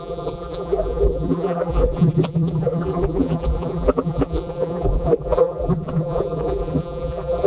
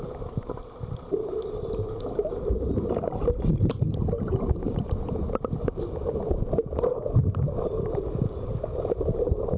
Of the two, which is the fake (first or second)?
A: first